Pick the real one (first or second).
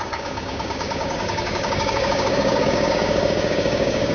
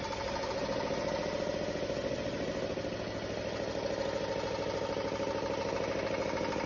second